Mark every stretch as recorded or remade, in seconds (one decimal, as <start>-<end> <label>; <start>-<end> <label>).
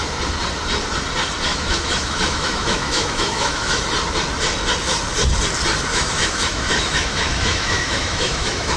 0.0-1.5 recorded; 1.5-3.8 remade; 3.8-5.9 recorded; 5.9-8.8 remade